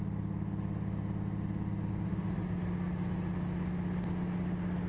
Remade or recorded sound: recorded